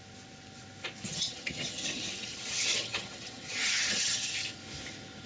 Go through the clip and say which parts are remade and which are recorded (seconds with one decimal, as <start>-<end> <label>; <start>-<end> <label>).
0.0-1.1 recorded; 1.1-4.3 remade; 4.3-5.3 recorded